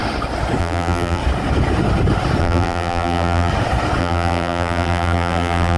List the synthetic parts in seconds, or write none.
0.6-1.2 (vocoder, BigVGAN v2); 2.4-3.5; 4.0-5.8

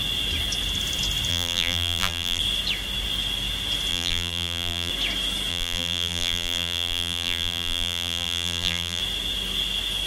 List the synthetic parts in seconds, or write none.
1.3-2.4 (vocoder, BigVGAN v2); 3.9-4.9; 5.5-9.0

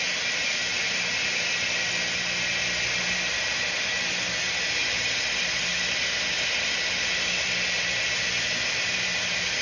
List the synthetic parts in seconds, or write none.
none

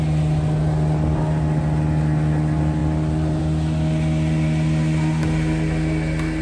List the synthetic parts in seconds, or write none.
2.8-3.4 (vocoder, BigVGAN v2)

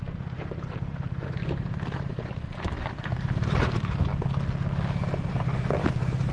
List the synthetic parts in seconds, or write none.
0.0-4.1 (vocoder, BigVGAN v2); 5.3-6.3